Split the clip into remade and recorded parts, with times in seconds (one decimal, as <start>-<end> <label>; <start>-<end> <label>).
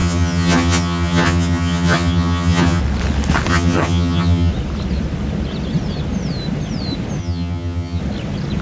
0.0-2.8 remade; 2.8-3.5 recorded; 3.5-4.5 remade; 4.5-7.2 recorded; 7.2-8.0 remade; 8.0-8.6 recorded